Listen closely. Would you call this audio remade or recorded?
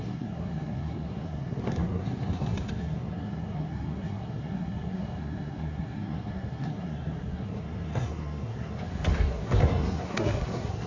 remade